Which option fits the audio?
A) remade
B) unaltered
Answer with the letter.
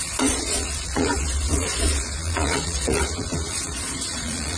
A